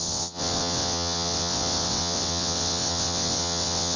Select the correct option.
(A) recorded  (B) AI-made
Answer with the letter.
B